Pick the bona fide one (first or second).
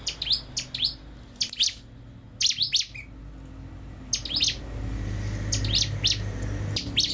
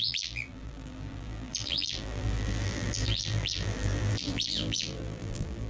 first